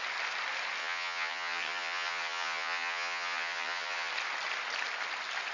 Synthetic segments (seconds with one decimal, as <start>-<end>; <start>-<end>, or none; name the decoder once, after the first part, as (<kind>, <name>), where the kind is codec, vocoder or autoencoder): 0.8-4.1 (vocoder, HiFi-GAN)